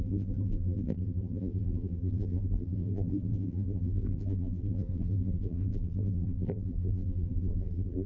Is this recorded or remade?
remade